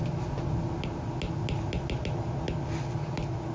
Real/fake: real